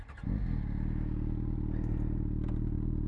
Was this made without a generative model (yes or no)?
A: yes